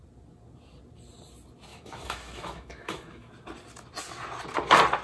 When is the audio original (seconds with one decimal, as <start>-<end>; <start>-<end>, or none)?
0.0-1.7; 3.3-5.0